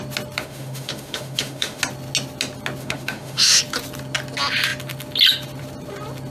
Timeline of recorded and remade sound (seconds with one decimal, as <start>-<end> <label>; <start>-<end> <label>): 0.0-0.4 recorded; 0.4-1.8 remade; 1.8-2.8 recorded; 2.8-3.6 remade; 3.6-6.3 recorded